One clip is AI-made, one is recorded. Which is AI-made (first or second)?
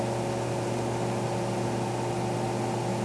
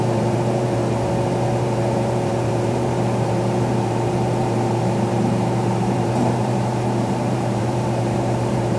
second